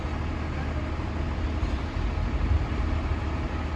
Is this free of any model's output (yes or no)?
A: yes